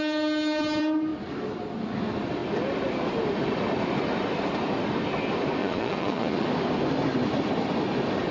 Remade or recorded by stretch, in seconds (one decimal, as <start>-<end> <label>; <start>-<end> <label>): 0.0-5.6 recorded; 5.6-6.5 remade; 6.5-8.3 recorded